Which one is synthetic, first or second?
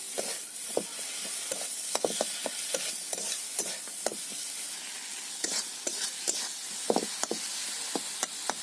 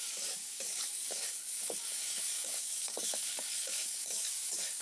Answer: second